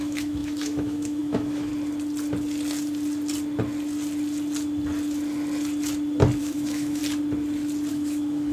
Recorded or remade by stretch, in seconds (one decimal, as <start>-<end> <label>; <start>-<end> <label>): 0.0-1.7 remade; 1.7-6.4 recorded; 6.4-7.0 remade; 7.0-7.9 recorded; 7.9-8.5 remade